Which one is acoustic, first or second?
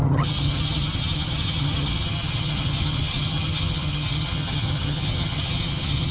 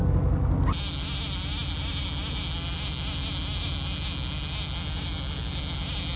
second